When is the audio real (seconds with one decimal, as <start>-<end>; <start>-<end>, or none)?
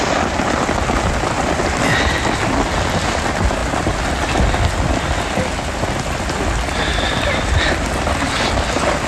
0.0-9.1